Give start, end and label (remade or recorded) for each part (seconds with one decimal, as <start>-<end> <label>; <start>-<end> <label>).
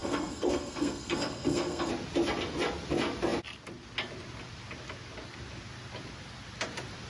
0.0-1.9 remade; 1.9-7.1 recorded